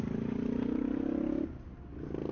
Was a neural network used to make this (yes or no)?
no